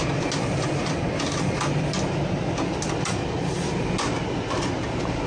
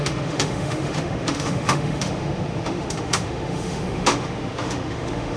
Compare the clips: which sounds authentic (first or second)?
first